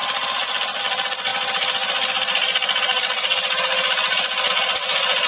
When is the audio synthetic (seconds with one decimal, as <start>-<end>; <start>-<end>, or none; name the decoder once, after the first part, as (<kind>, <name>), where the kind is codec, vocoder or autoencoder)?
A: none